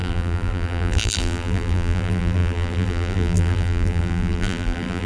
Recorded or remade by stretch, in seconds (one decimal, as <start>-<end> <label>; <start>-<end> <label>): 0.0-5.1 remade